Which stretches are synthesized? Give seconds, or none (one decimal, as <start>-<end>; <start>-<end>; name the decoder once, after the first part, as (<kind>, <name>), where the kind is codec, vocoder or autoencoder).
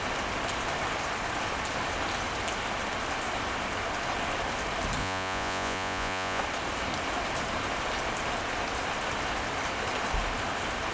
5.0-6.4 (vocoder, Vocos)